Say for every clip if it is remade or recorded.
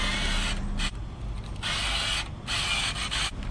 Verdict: recorded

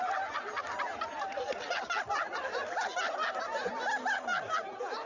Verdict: recorded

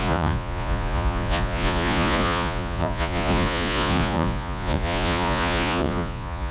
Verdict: remade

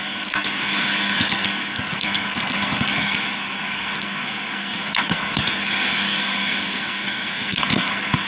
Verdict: remade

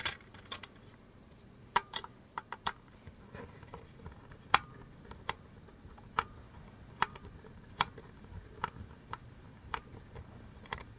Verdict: remade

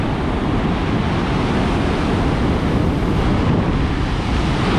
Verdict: recorded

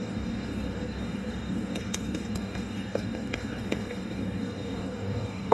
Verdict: remade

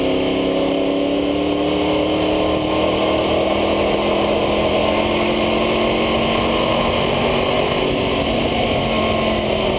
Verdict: recorded